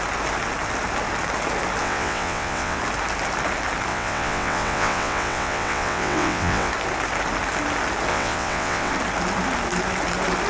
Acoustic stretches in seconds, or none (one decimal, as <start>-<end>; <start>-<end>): 0.0-1.8; 2.8-3.9; 6.7-8.1; 8.9-10.5